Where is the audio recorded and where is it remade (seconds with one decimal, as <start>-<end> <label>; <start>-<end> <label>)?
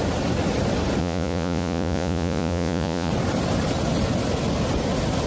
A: 0.0-1.0 recorded; 1.0-3.1 remade; 3.1-5.3 recorded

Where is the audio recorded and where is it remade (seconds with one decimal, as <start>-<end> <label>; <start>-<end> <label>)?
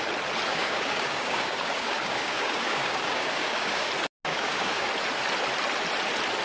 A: 0.0-0.5 recorded; 0.5-3.9 remade; 3.9-4.3 recorded; 4.3-4.9 remade; 4.9-6.4 recorded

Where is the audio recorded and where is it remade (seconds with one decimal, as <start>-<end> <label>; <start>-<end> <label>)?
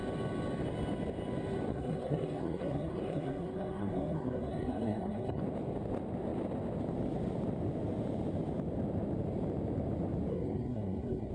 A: 0.0-1.7 recorded; 1.7-5.4 remade; 5.4-10.3 recorded; 10.3-11.3 remade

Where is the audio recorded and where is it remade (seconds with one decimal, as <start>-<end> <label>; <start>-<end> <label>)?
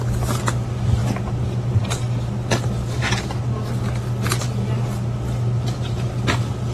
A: 0.0-6.7 recorded